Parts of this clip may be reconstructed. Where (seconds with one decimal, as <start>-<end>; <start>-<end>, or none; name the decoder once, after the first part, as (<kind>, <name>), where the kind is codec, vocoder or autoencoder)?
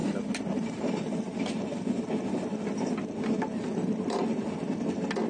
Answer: none